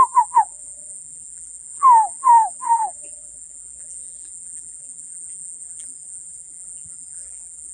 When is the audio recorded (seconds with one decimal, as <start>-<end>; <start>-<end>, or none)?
none